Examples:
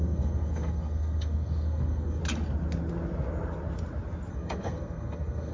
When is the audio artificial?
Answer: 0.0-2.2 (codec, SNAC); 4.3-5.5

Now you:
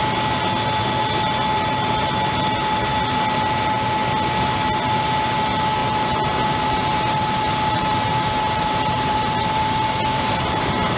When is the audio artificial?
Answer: 5.8-9.4 (vocoder, BigVGAN v2)

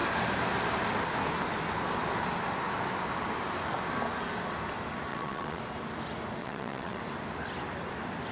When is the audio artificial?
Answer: 5.1-5.6 (vocoder, WaveNeXt); 6.4-7.0

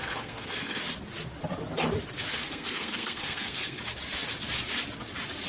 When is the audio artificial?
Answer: 0.0-0.8 (codec, SNAC); 2.3-3.8

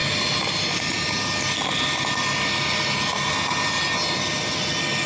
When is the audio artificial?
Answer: none

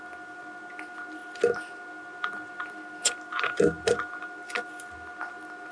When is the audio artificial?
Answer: none